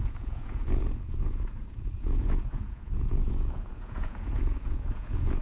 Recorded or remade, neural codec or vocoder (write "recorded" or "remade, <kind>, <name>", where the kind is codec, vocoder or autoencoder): remade, vocoder, Vocos